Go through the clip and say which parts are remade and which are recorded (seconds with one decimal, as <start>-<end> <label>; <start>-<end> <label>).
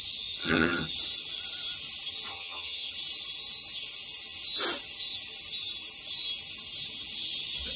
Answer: 0.0-0.4 recorded; 0.4-0.9 remade; 0.9-2.3 recorded; 2.3-2.9 remade; 2.9-7.8 recorded